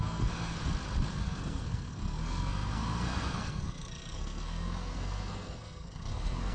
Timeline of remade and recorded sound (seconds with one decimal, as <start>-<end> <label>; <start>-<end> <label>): 0.0-0.6 remade; 0.6-1.1 recorded; 1.1-6.5 remade